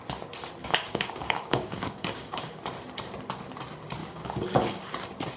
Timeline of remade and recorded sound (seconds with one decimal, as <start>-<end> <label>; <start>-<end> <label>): 0.0-0.6 recorded; 0.6-2.6 remade; 2.6-4.0 recorded; 4.0-4.8 remade; 4.8-5.4 recorded